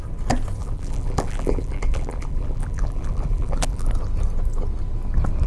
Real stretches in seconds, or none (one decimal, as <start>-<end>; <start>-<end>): 0.0-0.6; 3.9-5.5